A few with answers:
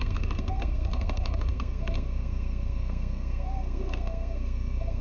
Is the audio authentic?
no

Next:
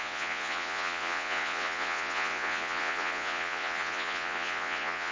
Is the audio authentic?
no